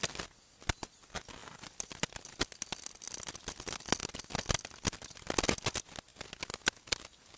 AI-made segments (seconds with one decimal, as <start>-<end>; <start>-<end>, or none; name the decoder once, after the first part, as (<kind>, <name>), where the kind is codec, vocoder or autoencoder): none